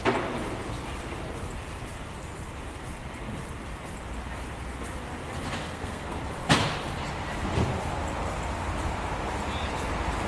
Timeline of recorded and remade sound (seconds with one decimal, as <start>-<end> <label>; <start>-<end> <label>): 0.0-5.6 recorded; 5.6-6.2 remade; 6.2-10.3 recorded